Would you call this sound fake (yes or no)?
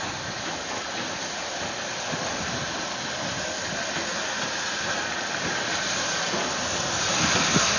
no